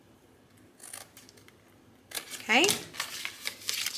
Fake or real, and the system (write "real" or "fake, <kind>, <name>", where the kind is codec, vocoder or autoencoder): real